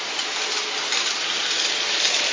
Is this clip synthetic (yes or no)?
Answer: no